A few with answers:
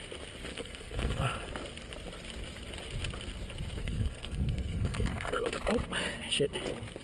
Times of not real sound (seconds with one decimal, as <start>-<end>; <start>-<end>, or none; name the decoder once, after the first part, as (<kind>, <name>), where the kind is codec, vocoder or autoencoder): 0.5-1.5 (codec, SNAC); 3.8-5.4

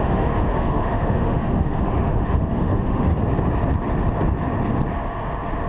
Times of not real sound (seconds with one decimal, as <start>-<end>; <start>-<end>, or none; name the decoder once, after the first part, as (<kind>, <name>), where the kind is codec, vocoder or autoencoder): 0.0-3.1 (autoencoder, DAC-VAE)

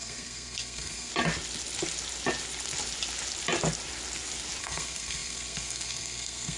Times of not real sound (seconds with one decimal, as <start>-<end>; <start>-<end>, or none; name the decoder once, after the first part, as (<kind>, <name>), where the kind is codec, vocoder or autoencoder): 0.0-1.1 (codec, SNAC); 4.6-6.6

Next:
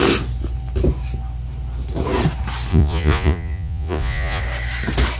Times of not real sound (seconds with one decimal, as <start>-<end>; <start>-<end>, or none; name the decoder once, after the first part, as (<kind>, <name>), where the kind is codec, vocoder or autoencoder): 2.7-4.4 (vocoder, Vocos)

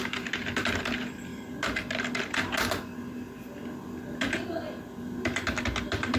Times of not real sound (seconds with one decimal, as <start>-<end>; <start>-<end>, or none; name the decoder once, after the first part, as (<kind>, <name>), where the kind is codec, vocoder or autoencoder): none